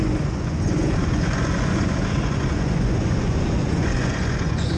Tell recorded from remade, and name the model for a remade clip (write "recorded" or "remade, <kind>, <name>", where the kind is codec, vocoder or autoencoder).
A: remade, vocoder, Vocos